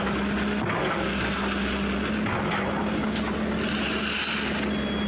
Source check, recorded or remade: recorded